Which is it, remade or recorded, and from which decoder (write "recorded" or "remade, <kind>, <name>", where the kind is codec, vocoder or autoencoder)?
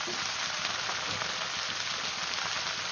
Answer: recorded